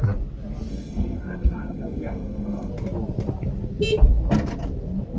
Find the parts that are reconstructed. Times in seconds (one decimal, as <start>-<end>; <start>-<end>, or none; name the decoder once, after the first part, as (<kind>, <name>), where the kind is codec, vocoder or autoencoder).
0.7-2.7 (codec, SNAC)